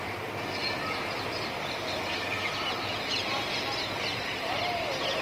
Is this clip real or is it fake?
real